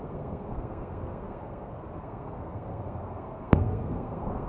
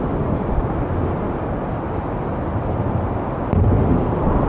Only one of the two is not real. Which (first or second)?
first